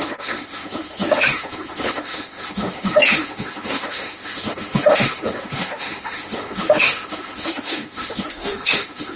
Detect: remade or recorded remade